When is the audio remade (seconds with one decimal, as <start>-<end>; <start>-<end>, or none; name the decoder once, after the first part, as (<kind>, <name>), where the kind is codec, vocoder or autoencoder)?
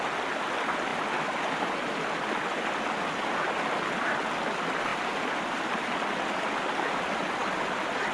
none